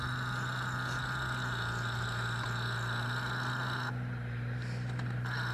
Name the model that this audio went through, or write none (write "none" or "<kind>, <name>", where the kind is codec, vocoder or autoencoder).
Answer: none